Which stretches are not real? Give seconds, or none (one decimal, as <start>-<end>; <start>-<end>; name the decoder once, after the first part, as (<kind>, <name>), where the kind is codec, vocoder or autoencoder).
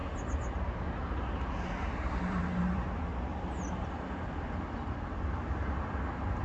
0.8-3.1 (vocoder, BigVGAN v2); 6.0-6.4